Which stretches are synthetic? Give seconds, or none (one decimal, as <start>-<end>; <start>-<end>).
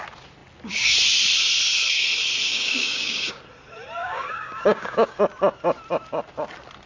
2.5-3.3; 4.0-5.2